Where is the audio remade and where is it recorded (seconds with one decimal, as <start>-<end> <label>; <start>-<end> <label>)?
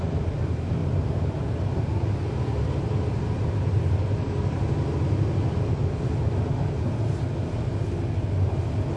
0.0-9.0 recorded